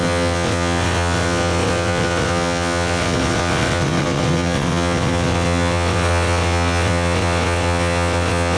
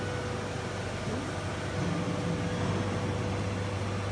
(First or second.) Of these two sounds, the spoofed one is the first